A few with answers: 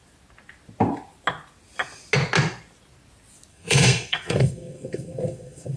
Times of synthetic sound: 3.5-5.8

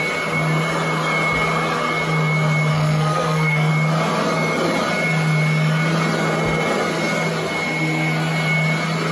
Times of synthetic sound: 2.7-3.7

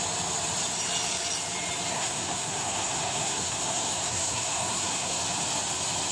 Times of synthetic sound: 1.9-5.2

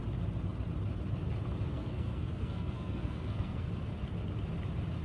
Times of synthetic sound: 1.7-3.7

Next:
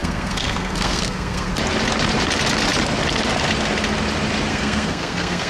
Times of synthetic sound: 0.0-1.5; 4.5-5.5

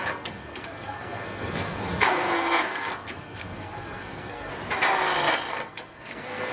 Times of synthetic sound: 0.0-4.5; 5.5-6.5